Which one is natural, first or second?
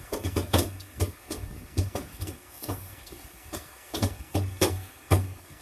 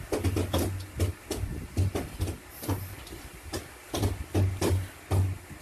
second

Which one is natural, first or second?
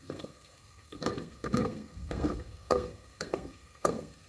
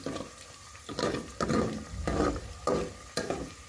second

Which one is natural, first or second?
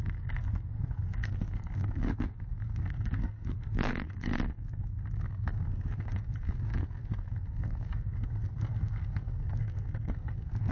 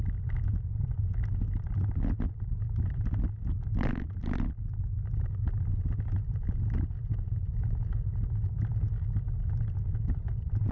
second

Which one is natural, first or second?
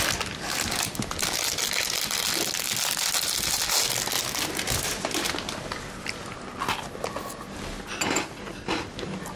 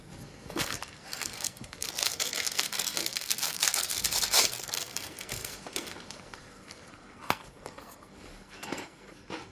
first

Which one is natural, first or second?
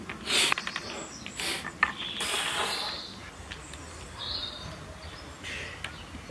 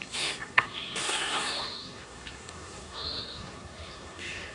first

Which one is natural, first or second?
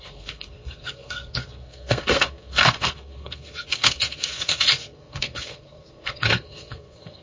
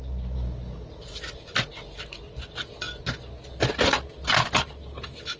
second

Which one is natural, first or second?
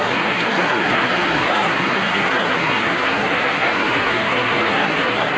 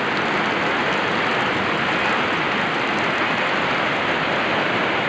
second